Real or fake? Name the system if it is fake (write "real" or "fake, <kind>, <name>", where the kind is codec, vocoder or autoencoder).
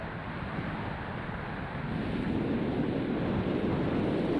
real